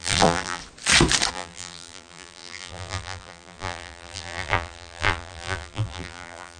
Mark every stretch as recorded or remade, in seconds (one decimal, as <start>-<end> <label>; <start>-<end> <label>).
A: 0.0-0.6 remade; 0.6-1.3 recorded; 1.3-6.6 remade